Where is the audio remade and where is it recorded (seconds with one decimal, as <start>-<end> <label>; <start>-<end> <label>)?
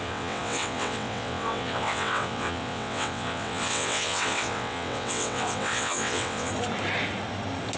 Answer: 0.0-6.5 remade; 6.5-7.8 recorded